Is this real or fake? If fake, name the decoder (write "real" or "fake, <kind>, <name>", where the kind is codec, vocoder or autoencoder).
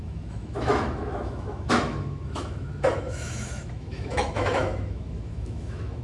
fake, autoencoder, DAC-VAE